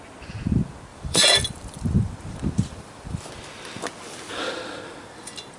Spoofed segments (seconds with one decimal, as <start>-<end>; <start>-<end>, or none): 0.9-3.3